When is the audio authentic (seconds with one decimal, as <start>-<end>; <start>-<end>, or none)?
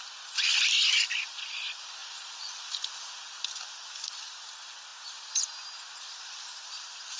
0.0-2.0; 2.5-7.2